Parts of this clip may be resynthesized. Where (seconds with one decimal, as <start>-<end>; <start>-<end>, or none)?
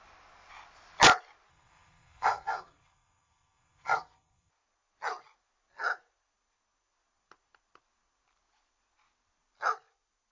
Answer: 1.5-4.5